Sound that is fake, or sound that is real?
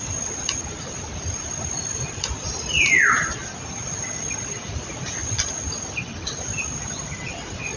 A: real